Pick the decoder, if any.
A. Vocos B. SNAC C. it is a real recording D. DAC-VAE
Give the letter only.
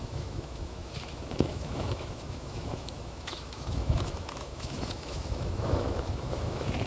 D